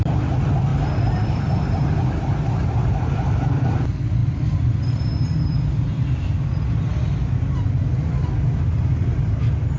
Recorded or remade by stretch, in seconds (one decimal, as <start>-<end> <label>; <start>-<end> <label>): 0.0-2.8 recorded; 2.8-3.6 remade; 3.6-4.2 recorded; 4.2-6.1 remade; 6.1-9.8 recorded